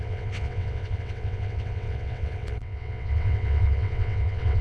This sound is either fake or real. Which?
fake